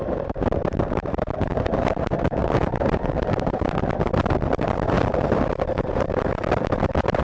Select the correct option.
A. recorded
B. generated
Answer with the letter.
B